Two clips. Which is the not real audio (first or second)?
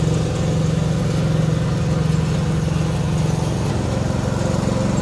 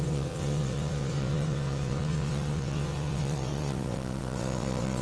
second